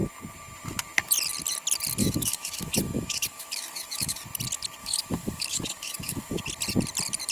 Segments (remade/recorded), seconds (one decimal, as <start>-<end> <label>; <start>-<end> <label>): 0.0-2.0 recorded; 2.0-4.2 remade; 4.2-4.8 recorded; 4.8-6.4 remade; 6.4-7.3 recorded